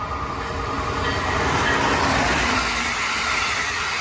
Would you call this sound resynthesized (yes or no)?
no